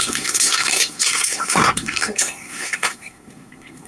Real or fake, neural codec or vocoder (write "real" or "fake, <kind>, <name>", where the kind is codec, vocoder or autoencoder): fake, codec, SNAC